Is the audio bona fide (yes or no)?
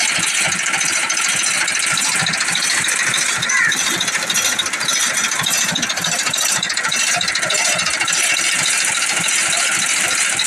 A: no